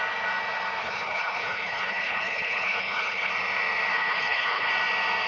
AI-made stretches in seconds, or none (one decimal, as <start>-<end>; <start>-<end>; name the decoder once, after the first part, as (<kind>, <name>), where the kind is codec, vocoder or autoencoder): 0.8-3.3 (codec, HILCodec); 3.9-4.7